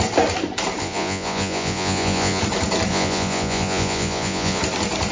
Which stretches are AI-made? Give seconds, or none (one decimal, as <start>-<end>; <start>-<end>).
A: 0.8-2.4; 2.9-4.6